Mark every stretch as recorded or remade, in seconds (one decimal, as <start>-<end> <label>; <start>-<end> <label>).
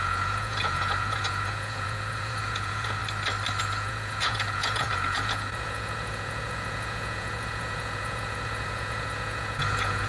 0.0-3.0 remade; 3.0-3.6 recorded; 3.6-10.1 remade